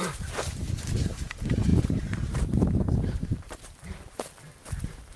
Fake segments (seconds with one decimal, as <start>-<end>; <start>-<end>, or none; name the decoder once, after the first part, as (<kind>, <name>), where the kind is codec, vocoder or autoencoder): 0.0-5.2 (vocoder, BigVGAN v2)